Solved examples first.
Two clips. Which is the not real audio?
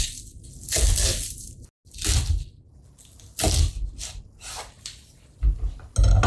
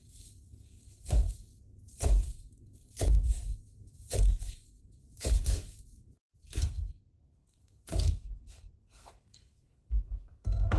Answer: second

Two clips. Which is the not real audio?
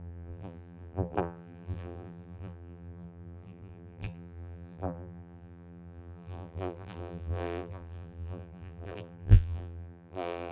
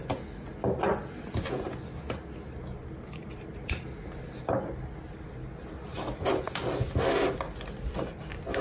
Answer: first